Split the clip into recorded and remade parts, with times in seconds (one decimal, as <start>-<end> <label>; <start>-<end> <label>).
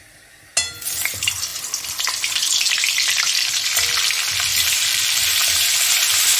0.0-4.5 recorded; 4.5-5.9 remade; 5.9-6.4 recorded